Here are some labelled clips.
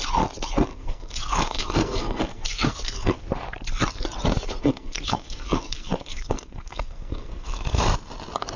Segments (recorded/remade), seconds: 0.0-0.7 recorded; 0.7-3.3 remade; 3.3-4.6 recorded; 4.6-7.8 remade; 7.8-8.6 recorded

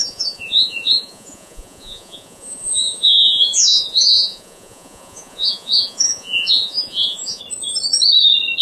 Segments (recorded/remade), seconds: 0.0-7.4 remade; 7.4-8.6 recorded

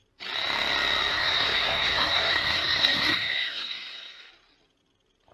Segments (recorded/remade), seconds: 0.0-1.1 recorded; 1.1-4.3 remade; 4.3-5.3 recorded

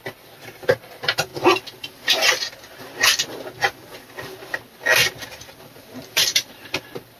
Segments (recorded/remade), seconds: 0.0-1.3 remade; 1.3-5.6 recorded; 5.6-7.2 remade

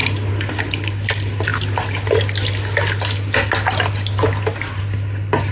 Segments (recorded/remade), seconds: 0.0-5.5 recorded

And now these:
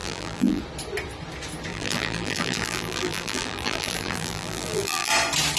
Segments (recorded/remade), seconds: 0.0-0.6 remade; 0.6-1.7 recorded; 1.7-5.1 remade; 5.1-5.6 recorded